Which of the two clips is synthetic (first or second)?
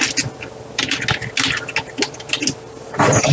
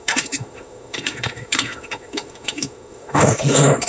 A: second